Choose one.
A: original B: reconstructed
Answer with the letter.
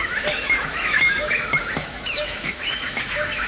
B